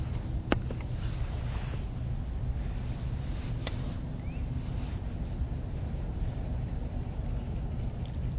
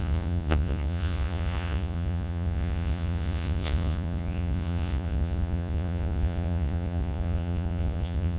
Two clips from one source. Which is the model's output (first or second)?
second